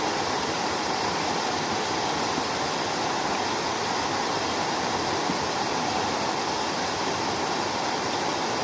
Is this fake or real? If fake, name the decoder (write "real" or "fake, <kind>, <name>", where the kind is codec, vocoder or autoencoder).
real